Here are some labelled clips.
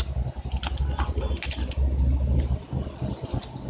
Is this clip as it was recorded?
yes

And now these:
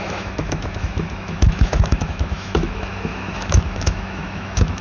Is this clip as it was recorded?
no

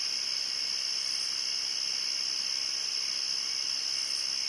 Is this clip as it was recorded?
yes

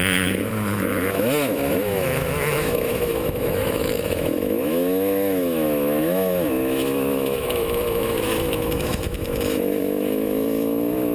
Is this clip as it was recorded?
no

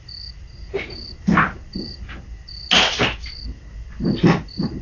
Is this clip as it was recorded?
yes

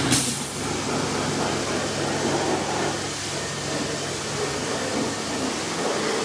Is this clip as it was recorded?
yes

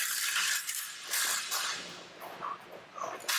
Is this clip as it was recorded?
yes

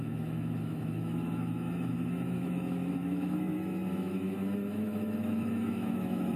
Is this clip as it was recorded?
no